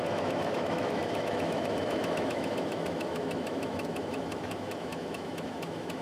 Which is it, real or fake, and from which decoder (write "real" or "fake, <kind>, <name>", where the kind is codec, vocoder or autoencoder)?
fake, autoencoder, DAC-VAE